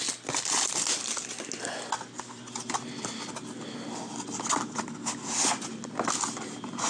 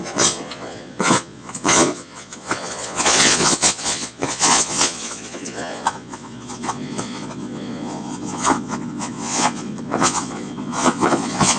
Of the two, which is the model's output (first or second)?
second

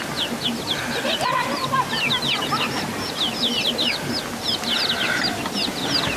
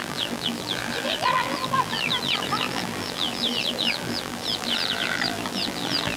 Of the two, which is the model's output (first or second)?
second